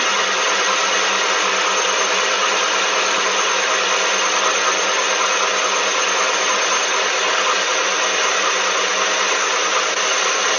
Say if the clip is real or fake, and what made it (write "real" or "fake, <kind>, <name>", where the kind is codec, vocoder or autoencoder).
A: real